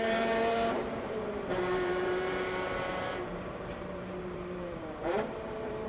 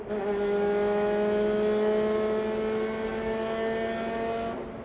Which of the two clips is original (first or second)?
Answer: second